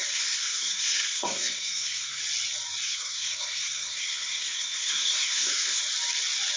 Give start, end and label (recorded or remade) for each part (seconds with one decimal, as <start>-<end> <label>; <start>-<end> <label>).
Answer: 0.0-2.2 remade; 2.2-2.8 recorded; 2.8-5.8 remade; 5.8-6.6 recorded